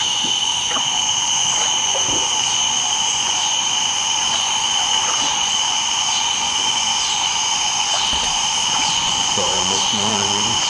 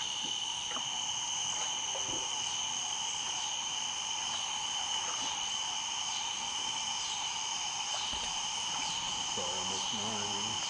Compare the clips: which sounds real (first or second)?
second